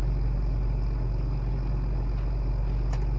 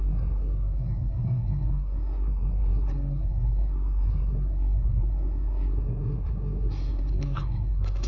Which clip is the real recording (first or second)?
first